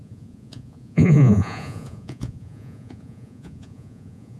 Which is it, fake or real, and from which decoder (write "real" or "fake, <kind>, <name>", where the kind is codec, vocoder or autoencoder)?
fake, vocoder, Vocos